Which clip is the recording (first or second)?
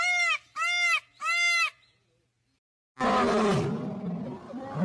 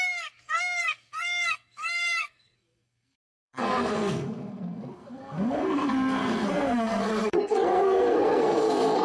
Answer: first